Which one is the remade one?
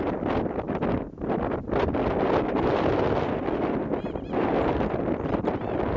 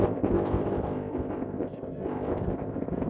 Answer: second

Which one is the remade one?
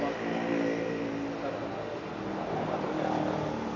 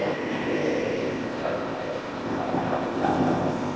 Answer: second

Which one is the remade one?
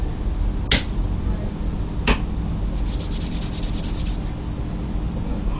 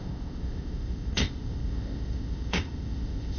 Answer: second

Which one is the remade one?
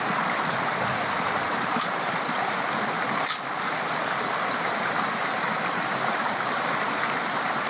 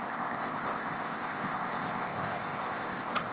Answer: second